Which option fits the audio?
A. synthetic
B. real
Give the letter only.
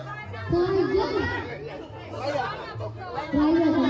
B